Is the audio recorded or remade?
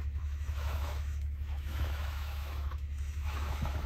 remade